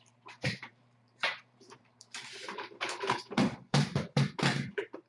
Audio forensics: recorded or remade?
remade